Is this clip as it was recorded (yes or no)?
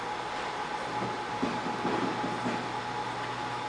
yes